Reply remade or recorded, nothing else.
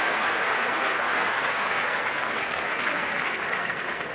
remade